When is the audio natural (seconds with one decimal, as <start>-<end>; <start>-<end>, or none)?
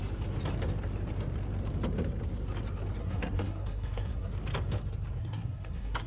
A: 0.0-3.0; 4.3-5.2